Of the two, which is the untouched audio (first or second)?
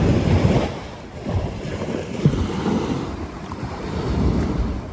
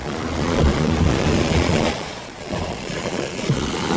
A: first